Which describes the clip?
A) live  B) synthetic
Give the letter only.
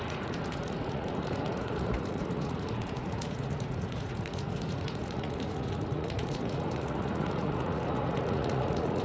B